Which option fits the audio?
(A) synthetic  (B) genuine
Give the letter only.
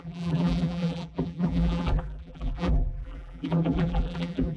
A